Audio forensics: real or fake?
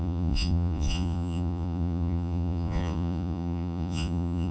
fake